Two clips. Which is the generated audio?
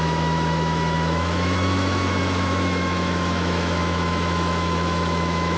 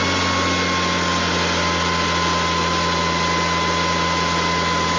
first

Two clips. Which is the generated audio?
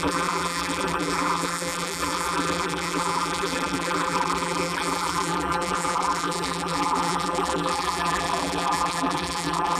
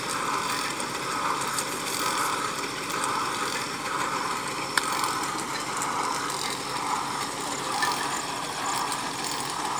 first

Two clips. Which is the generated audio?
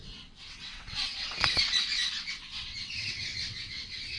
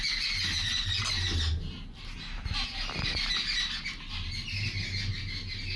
first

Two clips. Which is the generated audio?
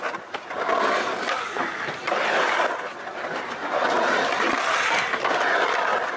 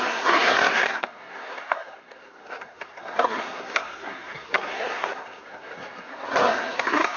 second